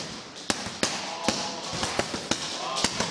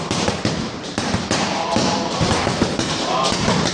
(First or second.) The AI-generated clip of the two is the second